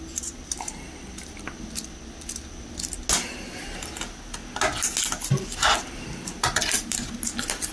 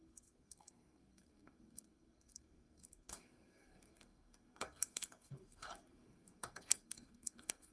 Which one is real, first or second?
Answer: first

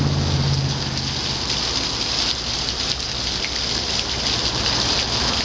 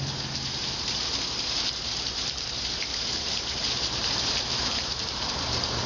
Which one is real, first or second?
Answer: first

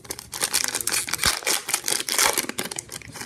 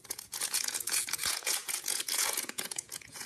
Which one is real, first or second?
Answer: first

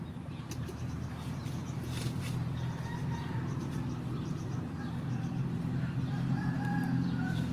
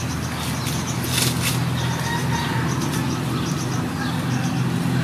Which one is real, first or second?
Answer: second